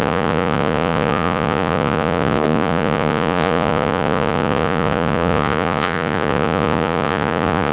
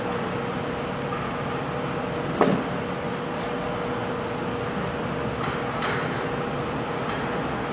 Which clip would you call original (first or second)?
second